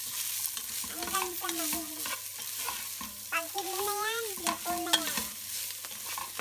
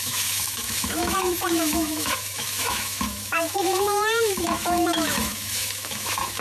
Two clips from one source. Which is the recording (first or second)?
first